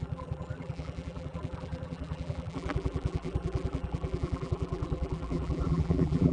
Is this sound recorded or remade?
remade